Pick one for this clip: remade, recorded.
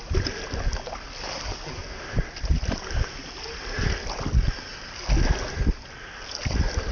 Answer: recorded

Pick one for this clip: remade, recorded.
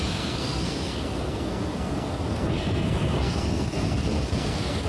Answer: remade